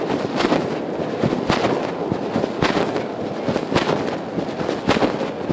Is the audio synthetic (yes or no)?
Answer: no